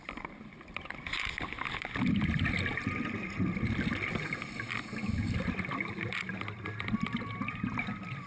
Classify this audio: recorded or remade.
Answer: remade